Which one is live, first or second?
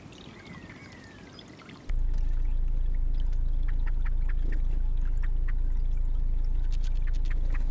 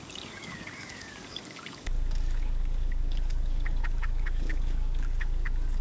first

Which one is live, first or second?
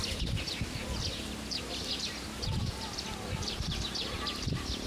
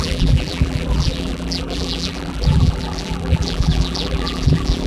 first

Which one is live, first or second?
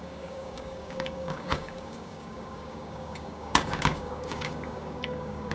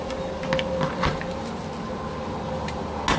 second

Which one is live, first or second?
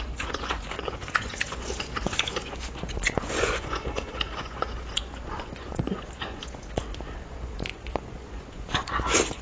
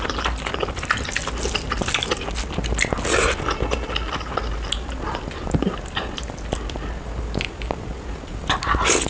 second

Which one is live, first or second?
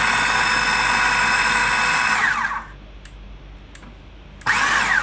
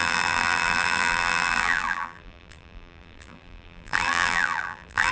first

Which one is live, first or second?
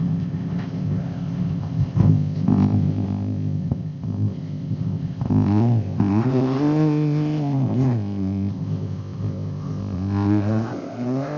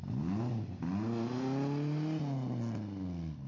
second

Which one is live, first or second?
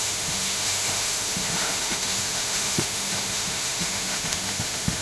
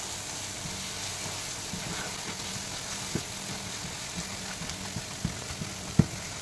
second